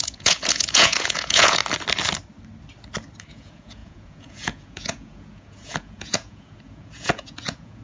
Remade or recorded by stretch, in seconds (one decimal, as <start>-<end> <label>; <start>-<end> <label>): 0.0-1.6 remade; 1.6-3.3 recorded; 3.3-7.8 remade

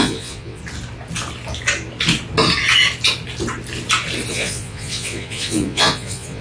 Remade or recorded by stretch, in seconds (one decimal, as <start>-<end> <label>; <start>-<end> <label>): 0.0-0.6 remade; 0.6-4.3 recorded; 4.3-6.4 remade

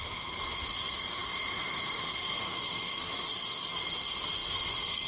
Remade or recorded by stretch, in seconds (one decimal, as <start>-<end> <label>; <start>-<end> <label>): 0.0-5.1 recorded

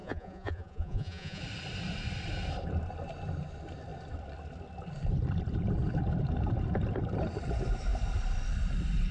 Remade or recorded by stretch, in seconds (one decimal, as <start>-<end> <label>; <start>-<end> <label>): 0.0-1.4 remade; 1.4-9.1 recorded

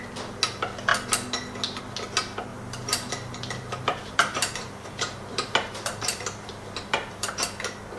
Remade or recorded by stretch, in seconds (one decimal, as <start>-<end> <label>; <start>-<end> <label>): 0.0-2.5 recorded; 2.5-7.3 remade; 7.3-8.0 recorded